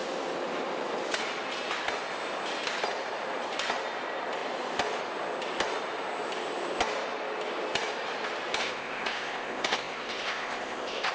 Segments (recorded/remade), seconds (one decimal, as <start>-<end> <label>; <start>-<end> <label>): 0.0-8.6 recorded; 8.6-11.1 remade